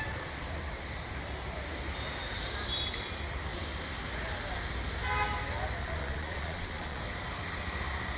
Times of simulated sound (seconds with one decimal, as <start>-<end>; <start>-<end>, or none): 5.8-7.0